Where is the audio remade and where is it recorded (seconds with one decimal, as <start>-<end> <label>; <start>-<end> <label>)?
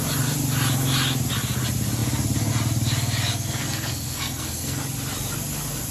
0.0-3.3 recorded; 3.3-4.8 remade; 4.8-5.9 recorded